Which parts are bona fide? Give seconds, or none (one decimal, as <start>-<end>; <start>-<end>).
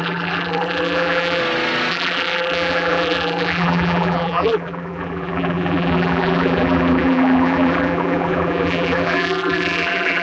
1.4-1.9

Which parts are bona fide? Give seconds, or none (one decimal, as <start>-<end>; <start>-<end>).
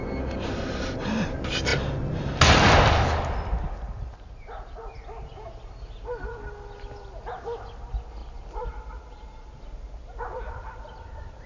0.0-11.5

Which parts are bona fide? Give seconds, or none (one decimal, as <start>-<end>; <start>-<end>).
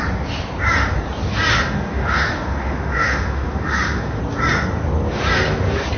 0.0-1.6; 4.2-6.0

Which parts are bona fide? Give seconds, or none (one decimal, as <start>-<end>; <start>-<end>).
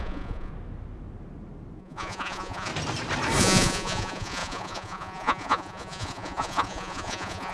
0.5-1.8; 2.7-3.4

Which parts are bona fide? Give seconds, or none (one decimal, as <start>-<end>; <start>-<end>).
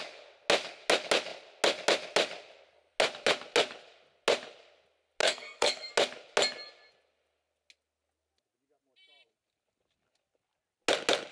0.0-5.2; 5.9-11.3